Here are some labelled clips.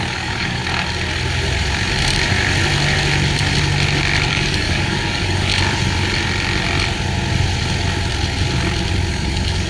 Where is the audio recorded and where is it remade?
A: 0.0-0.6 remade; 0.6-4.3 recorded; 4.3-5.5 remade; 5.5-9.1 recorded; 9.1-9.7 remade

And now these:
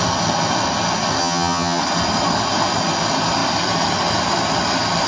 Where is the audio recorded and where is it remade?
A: 0.0-1.2 recorded; 1.2-1.8 remade; 1.8-5.1 recorded

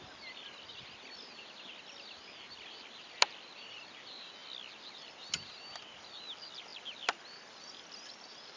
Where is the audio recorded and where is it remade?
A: 0.0-8.6 recorded

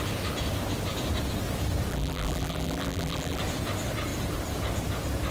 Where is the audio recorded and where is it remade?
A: 0.0-1.9 recorded; 1.9-3.4 remade; 3.4-5.3 recorded

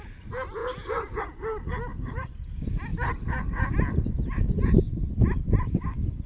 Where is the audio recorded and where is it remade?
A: 0.0-1.9 recorded; 1.9-2.5 remade; 2.5-6.3 recorded

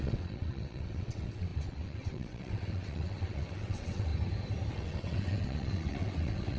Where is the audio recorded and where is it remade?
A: 0.0-4.1 remade; 4.1-4.7 recorded; 4.7-6.6 remade

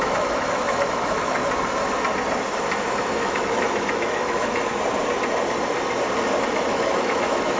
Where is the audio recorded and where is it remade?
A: 0.0-1.4 remade; 1.4-3.1 recorded; 3.1-4.7 remade; 4.7-6.5 recorded; 6.5-7.6 remade